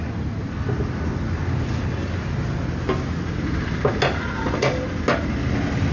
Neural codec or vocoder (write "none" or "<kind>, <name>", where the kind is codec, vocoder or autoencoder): none